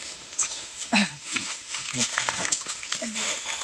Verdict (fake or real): fake